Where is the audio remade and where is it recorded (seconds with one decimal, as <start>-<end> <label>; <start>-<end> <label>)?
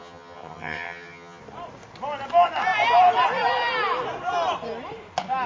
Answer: 0.0-1.4 remade; 1.4-5.5 recorded